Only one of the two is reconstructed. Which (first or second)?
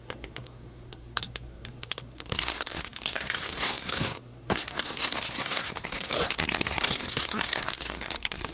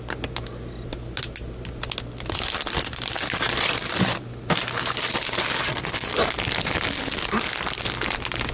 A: first